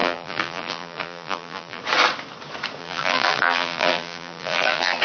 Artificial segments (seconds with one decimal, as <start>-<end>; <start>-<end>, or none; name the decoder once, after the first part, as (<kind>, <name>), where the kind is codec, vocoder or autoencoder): 0.0-1.8 (vocoder, BigVGAN v2); 2.8-5.0